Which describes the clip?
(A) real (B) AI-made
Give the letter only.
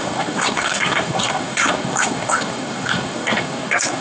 B